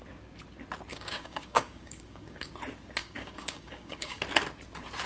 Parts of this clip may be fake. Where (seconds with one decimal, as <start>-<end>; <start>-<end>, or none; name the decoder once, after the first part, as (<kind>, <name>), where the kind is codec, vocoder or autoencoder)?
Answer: 0.9-2.5 (codec, DAC); 3.0-4.2